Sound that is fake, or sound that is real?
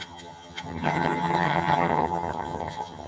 fake